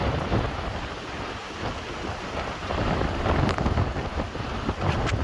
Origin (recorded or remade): recorded